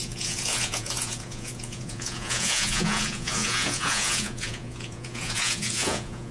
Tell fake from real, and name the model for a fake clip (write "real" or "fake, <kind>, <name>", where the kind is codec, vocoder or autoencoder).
fake, vocoder, Vocos